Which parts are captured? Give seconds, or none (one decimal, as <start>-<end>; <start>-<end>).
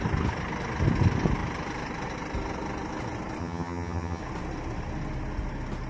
0.0-3.4; 4.2-5.9